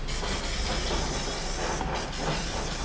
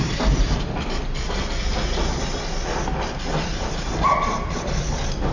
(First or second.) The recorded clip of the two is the first